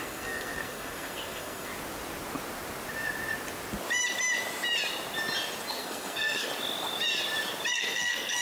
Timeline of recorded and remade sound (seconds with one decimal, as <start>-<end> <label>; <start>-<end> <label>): 0.0-1.7 remade; 1.7-5.7 recorded; 5.7-6.5 remade; 6.5-7.7 recorded; 7.7-8.4 remade